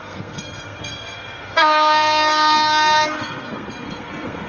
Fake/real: fake